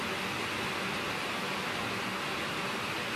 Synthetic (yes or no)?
no